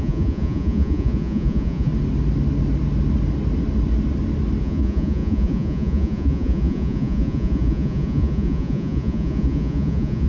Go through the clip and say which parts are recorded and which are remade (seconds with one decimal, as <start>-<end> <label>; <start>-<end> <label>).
0.0-1.9 remade; 1.9-4.6 recorded; 4.6-10.3 remade

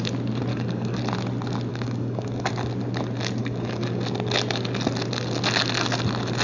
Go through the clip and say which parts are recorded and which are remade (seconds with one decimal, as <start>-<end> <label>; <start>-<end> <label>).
0.0-0.5 recorded; 0.5-1.0 remade; 1.0-1.7 recorded; 1.7-2.5 remade; 2.5-3.4 recorded; 3.4-4.0 remade; 4.0-6.4 recorded